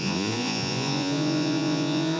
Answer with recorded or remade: remade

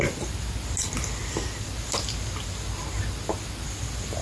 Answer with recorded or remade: recorded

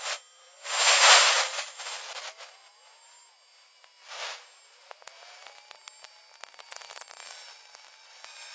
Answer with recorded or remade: recorded